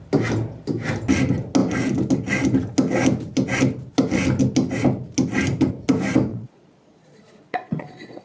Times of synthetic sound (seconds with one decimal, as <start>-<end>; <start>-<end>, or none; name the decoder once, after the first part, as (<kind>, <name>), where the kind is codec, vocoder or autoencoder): 6.3-8.2 (vocoder, Vocos)